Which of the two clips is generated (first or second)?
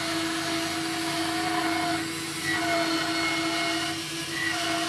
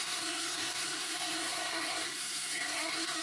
second